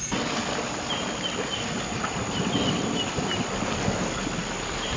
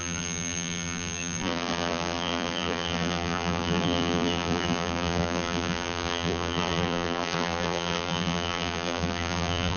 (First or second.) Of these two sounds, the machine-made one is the second